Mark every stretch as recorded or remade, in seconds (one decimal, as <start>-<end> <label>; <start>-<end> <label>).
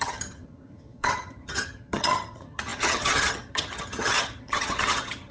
0.0-5.3 remade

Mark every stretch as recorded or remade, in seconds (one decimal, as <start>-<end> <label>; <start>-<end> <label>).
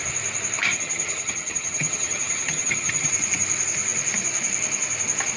0.0-0.7 recorded; 0.7-3.1 remade; 3.1-5.4 recorded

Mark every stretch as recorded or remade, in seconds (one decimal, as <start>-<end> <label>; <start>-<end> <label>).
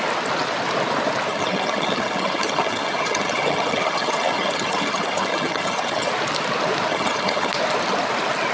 0.0-1.3 recorded; 1.3-6.1 remade; 6.1-6.9 recorded; 6.9-7.5 remade; 7.5-8.5 recorded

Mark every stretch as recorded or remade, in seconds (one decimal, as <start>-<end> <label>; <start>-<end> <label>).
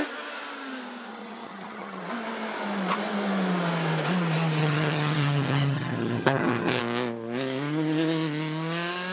0.0-1.1 recorded; 1.1-2.0 remade; 2.0-4.6 recorded; 4.6-6.8 remade; 6.8-9.1 recorded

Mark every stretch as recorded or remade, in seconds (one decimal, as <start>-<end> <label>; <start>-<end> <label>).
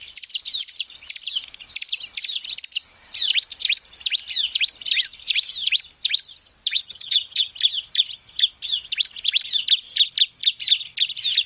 0.0-6.7 recorded; 6.7-7.5 remade; 7.5-11.5 recorded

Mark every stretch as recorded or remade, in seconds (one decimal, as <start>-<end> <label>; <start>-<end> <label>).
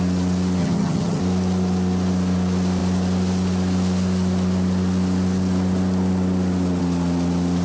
0.0-0.6 recorded; 0.6-1.2 remade; 1.2-7.6 recorded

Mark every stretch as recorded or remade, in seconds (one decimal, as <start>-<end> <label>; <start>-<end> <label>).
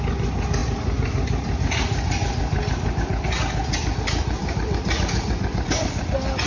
0.0-6.5 recorded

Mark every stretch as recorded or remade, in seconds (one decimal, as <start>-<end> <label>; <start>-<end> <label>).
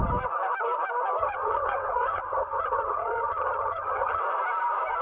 0.0-1.2 recorded; 1.2-4.2 remade; 4.2-5.0 recorded